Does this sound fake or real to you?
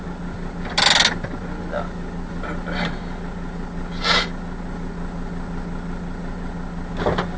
real